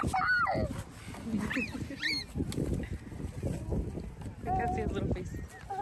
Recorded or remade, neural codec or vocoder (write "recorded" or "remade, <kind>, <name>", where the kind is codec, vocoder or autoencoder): recorded